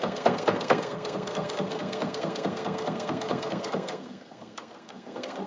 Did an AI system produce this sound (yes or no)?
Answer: yes